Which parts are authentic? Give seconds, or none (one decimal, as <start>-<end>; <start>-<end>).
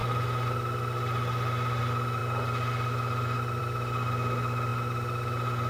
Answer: 0.0-5.7